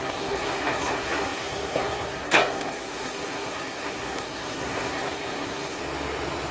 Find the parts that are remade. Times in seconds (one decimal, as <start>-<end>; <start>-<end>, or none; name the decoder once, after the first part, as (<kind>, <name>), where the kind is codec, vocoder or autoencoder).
0.0-5.8 (codec, SNAC)